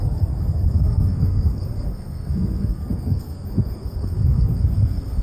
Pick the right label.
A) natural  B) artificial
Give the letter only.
B